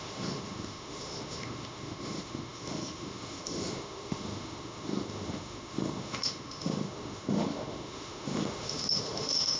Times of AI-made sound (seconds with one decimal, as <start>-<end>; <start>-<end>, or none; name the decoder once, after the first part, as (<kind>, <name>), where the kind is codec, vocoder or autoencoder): 0.0-9.6 (autoencoder, DAC-VAE)